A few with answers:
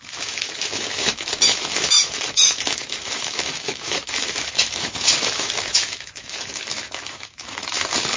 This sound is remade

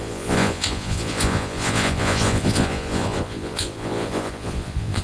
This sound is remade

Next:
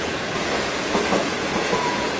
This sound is remade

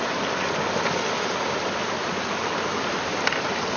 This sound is recorded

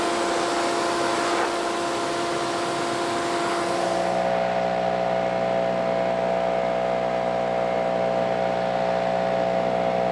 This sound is recorded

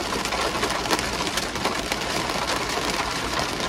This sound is recorded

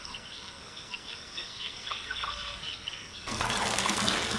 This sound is remade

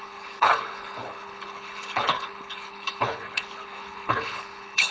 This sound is remade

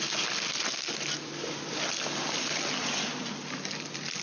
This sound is recorded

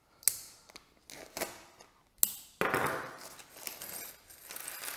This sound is recorded